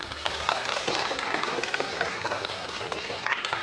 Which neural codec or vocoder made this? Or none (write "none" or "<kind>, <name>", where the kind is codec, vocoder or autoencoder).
codec, SNAC